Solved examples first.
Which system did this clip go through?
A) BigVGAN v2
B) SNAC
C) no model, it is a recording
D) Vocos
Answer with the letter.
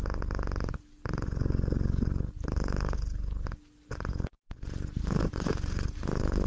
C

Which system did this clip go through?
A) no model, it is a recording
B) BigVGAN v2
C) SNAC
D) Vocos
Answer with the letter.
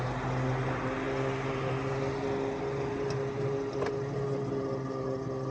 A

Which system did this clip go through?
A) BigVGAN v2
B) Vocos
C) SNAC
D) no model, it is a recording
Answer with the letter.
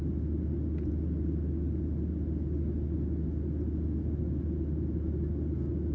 D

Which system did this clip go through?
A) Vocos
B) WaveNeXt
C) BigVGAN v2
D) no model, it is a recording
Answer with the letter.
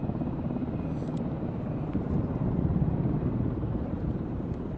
C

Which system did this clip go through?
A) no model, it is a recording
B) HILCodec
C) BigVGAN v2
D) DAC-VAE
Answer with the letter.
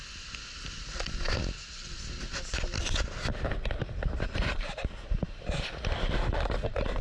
A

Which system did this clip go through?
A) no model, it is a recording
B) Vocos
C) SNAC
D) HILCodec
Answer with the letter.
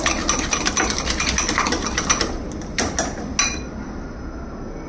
A